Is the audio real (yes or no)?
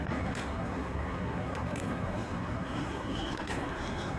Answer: no